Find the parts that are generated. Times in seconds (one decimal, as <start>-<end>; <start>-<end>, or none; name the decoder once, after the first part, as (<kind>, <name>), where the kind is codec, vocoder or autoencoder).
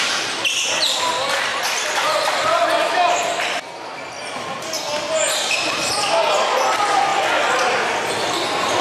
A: 1.5-2.6 (vocoder, BigVGAN v2)